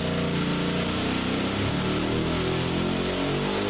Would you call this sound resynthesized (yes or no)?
no